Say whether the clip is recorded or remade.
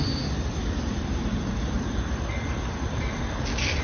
recorded